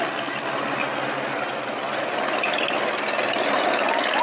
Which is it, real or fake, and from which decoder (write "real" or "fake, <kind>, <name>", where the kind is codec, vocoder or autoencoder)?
real